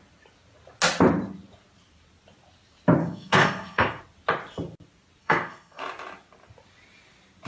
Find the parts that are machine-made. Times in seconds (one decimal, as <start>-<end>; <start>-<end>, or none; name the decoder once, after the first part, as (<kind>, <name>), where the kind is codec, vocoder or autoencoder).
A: 3.0-4.0 (codec, SNAC); 5.2-5.8